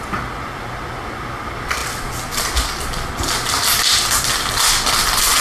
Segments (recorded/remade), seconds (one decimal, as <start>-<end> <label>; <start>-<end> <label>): 0.0-5.4 recorded